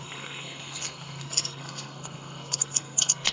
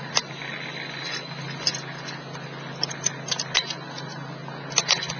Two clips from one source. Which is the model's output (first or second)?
first